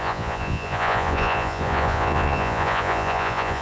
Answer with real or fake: fake